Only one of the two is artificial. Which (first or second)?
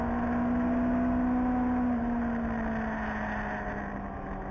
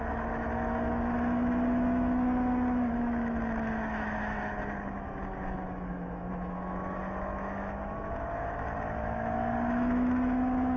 second